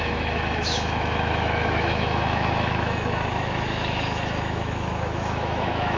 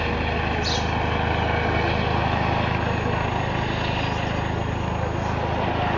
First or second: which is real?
second